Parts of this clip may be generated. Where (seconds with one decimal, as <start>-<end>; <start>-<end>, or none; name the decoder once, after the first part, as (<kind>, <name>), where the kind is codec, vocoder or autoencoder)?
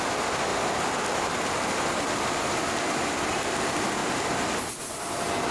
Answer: none